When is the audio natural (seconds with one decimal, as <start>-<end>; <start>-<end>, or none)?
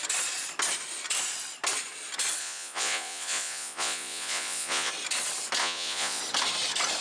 0.0-2.4; 4.9-5.6; 6.2-7.0